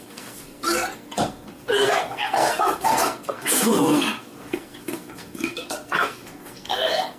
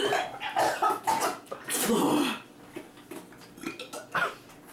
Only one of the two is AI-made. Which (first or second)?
first